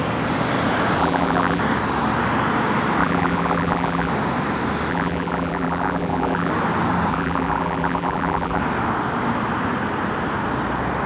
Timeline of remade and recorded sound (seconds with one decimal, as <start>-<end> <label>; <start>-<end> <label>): 0.0-1.0 recorded; 1.0-1.6 remade; 1.6-3.0 recorded; 3.0-4.1 remade; 4.1-4.9 recorded; 4.9-6.5 remade; 6.5-7.1 recorded; 7.1-8.6 remade; 8.6-11.1 recorded